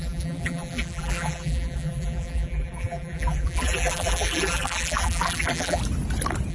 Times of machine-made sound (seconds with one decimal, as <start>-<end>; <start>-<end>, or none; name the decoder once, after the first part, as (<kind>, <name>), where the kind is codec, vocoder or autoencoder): 0.0-5.8 (vocoder, BigVGAN v2)